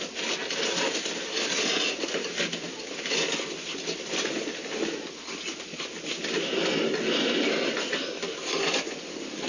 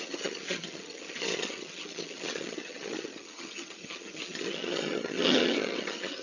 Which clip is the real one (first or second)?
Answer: first